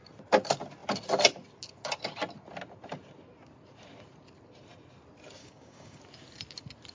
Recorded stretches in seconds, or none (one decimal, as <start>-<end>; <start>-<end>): 0.0-5.4; 6.0-6.9

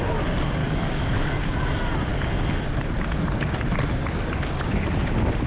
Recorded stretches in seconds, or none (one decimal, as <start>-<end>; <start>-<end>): 0.0-0.6; 1.6-5.5

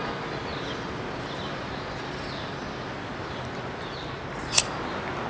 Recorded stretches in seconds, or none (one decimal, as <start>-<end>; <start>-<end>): 0.0-5.3